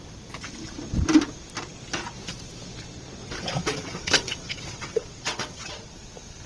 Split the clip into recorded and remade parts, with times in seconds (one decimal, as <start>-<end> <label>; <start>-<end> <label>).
0.0-3.2 recorded; 3.2-5.9 remade; 5.9-6.5 recorded